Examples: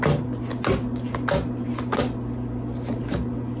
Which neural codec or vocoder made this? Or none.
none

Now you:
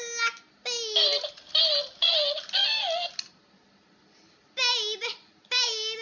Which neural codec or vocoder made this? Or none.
none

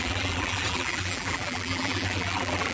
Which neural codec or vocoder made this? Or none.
vocoder, BigVGAN v2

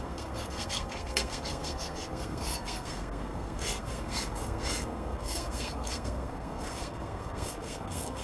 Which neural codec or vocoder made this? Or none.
codec, SNAC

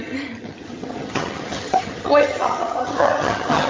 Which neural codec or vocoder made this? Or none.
vocoder, HiFi-GAN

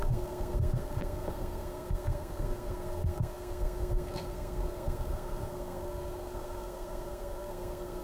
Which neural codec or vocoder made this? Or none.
codec, SNAC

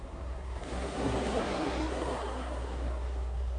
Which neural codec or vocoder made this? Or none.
codec, SNAC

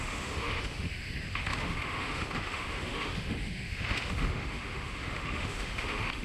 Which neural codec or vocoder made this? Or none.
autoencoder, DAC-VAE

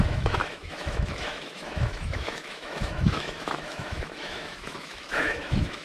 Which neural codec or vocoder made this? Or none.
autoencoder, DAC-VAE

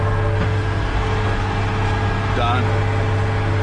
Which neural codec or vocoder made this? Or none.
none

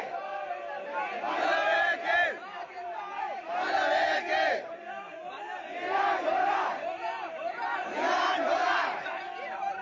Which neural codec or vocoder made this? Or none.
vocoder, BigVGAN v2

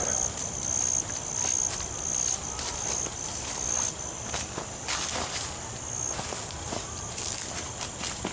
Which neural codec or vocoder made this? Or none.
none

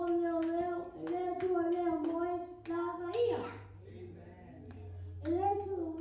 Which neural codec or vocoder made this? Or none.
none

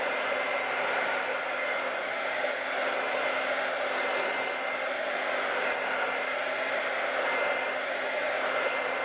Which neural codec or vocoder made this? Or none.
none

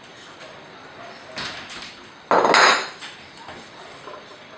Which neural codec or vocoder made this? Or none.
none